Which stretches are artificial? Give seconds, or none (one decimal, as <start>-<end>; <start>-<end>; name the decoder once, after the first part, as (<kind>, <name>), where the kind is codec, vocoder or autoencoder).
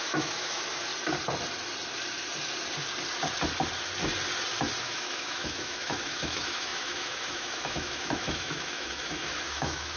0.0-0.9 (autoencoder, DAC-VAE); 4.8-10.0